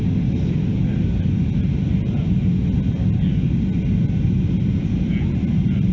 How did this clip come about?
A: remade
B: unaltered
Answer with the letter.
B